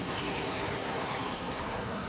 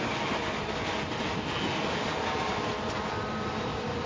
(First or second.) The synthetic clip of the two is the first